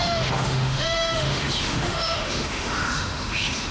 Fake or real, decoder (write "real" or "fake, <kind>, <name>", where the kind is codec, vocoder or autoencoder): fake, autoencoder, DAC-VAE